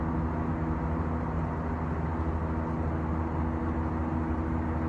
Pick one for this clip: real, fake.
real